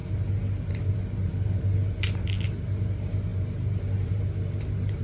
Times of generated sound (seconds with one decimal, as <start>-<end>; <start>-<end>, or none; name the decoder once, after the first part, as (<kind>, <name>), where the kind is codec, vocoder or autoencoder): none

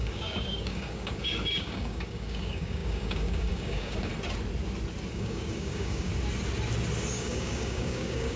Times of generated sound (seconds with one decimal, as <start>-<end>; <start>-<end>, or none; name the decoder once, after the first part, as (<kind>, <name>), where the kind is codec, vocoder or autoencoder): 0.0-4.1 (codec, DAC); 5.1-6.1; 7.1-8.4

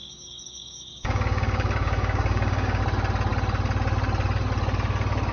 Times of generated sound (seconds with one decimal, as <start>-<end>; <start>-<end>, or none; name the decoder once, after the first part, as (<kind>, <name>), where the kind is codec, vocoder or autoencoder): 0.0-2.8 (codec, DAC)

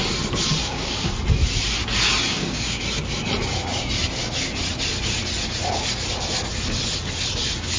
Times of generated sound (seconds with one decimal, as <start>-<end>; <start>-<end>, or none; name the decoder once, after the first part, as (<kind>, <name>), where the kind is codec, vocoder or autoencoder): 0.6-1.1 (codec, DAC); 2.3-2.8

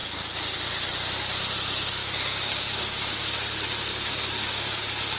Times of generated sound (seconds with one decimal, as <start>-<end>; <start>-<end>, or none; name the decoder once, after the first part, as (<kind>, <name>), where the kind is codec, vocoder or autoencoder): 2.0-3.2 (codec, DAC); 3.9-5.2